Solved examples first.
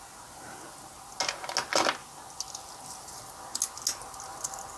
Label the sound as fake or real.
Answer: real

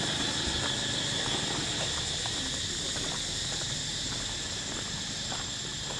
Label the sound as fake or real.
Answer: real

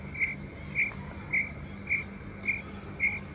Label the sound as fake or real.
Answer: real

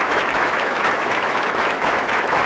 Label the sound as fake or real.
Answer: fake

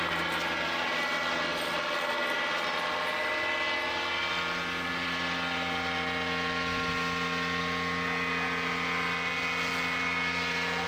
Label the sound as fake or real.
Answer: real